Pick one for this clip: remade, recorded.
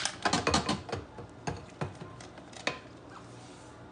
recorded